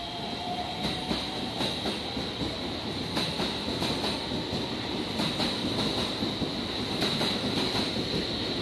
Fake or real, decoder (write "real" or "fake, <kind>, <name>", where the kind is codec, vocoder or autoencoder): real